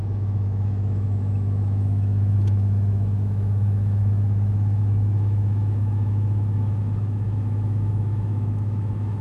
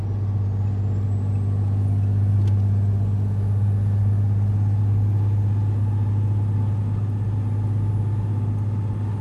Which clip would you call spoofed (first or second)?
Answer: first